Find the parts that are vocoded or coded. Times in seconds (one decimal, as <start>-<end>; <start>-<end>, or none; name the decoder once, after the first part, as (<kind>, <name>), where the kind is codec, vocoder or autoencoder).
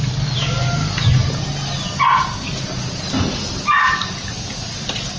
none